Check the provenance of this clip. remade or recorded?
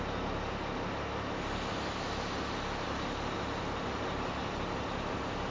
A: recorded